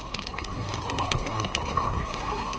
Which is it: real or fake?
fake